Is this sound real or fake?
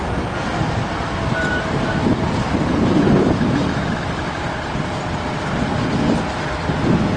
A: real